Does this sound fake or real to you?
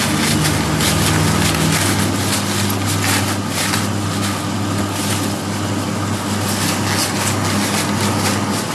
real